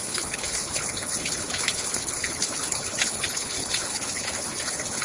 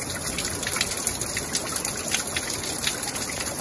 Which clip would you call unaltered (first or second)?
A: second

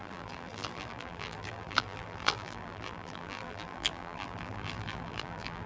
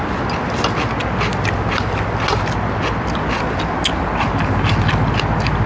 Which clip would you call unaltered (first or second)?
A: second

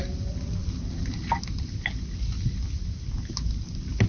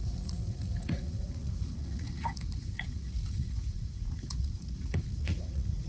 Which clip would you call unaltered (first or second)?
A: first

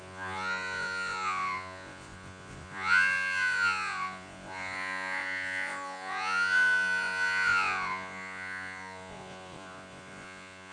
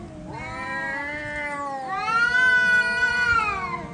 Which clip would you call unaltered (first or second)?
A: second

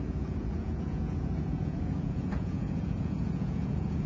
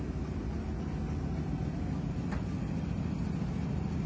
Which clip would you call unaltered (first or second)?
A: second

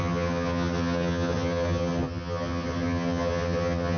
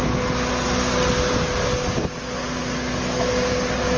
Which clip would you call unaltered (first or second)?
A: second